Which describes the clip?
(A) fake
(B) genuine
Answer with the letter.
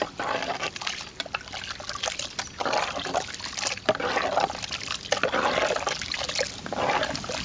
B